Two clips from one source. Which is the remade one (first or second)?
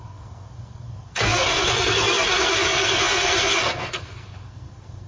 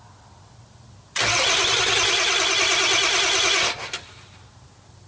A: first